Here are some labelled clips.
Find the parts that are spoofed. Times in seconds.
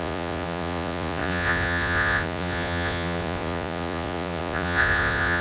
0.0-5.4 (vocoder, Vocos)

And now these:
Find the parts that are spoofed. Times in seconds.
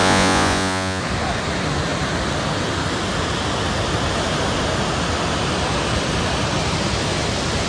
0.0-1.0 (vocoder, Vocos)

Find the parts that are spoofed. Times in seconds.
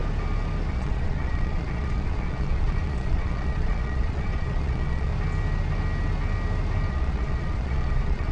0.7-5.1 (vocoder, Vocos); 6.9-8.3